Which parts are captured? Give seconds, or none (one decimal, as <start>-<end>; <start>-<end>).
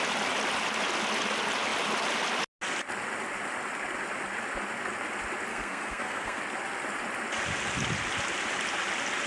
0.0-5.5; 6.4-9.3